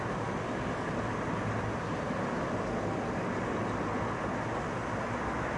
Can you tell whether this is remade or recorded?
recorded